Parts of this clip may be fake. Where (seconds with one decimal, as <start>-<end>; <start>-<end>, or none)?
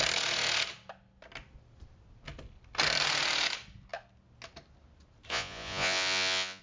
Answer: 5.3-6.6